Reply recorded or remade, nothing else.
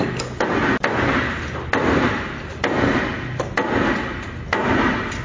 recorded